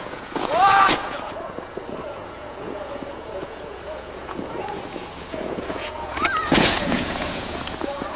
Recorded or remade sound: remade